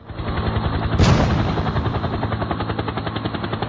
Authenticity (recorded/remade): recorded